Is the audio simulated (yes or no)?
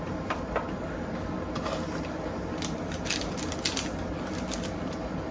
no